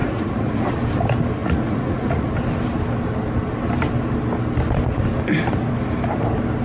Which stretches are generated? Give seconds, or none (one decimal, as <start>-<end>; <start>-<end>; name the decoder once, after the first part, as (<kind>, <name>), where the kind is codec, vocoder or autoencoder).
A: 0.0-0.7 (vocoder, Vocos); 1.4-2.3